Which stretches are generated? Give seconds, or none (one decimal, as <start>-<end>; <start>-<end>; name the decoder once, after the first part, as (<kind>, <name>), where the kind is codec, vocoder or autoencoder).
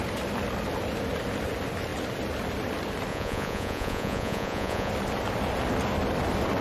3.1-4.9 (vocoder, Vocos)